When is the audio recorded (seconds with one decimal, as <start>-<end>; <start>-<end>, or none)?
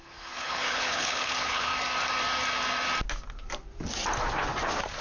1.7-5.0